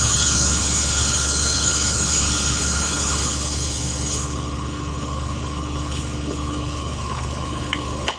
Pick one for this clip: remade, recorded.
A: remade